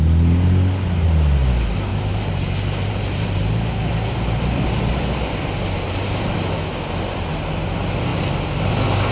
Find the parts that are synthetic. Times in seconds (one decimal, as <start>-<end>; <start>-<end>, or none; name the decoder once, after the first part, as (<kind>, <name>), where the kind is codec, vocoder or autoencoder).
1.9-3.9 (vocoder, BigVGAN v2)